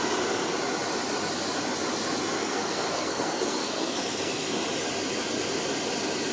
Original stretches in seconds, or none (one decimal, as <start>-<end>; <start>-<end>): 0.0-2.4; 4.5-6.3